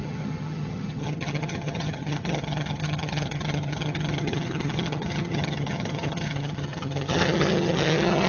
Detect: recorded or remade remade